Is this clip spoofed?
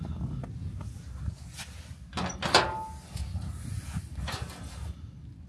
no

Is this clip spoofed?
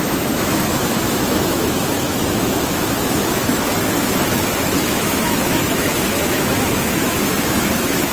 yes